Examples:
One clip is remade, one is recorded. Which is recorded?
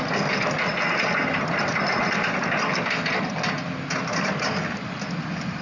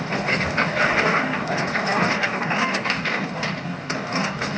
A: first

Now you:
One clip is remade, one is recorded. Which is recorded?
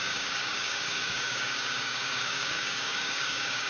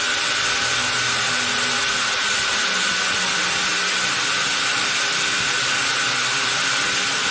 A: second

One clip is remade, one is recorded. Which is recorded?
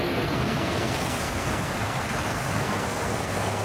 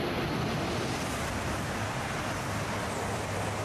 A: second